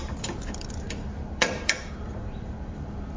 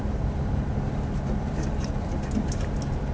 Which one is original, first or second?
second